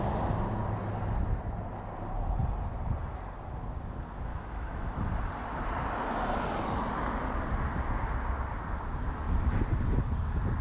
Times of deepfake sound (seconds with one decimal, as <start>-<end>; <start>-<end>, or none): 4.3-5.0